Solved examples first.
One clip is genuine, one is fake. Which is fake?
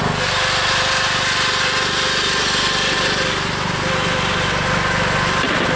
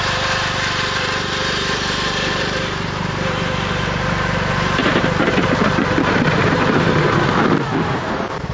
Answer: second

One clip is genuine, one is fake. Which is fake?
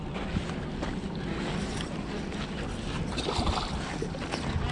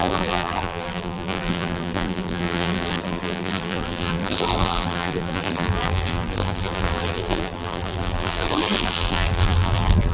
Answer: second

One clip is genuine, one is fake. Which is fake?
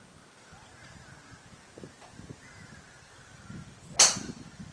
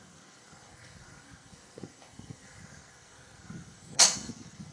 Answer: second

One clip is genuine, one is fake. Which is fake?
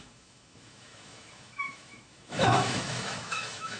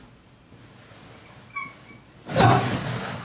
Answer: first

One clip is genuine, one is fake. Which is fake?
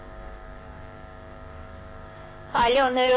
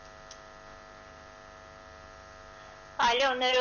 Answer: first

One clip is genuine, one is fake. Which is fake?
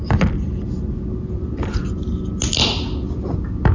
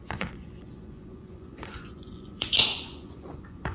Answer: second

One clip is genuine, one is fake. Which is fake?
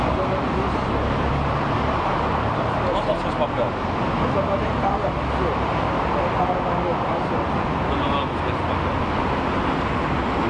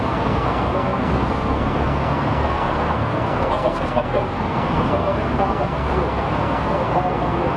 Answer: second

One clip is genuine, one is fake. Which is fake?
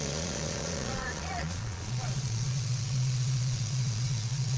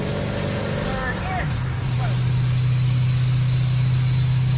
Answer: first